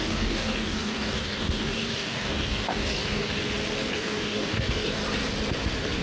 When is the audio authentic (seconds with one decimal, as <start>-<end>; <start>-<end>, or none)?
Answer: 3.4-3.9; 5.0-6.0